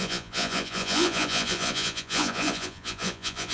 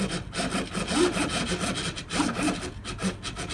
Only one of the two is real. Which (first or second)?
second